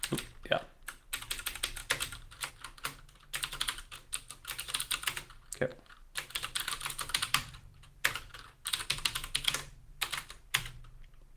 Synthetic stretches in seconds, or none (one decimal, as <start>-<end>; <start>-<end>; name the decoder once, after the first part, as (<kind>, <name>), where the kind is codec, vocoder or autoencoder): 5.7-8.4 (vocoder, BigVGAN v2); 9.7-10.4